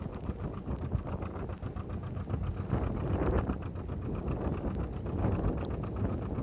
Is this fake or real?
real